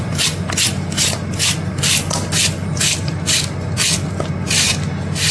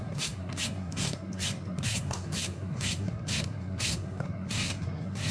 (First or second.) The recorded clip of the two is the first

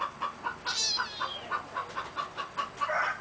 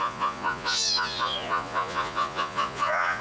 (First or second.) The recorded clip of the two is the first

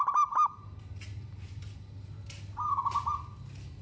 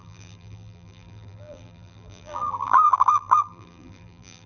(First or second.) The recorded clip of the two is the first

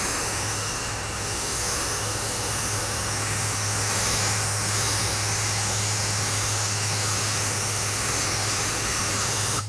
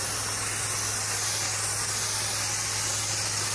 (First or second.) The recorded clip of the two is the second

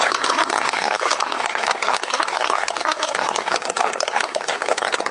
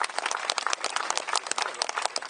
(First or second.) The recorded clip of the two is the second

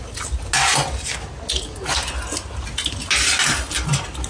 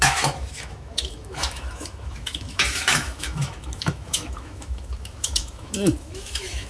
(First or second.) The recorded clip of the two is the first